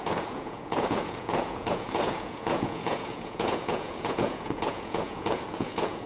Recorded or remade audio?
remade